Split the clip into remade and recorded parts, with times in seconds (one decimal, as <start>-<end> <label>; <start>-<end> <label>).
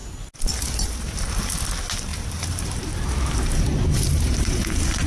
0.0-2.1 recorded; 2.1-5.1 remade